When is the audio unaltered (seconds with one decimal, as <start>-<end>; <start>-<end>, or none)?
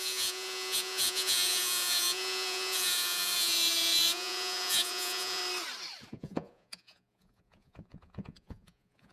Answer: 5.4-6.1